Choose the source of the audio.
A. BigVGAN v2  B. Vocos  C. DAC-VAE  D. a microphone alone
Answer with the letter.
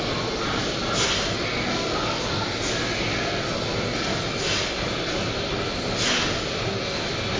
D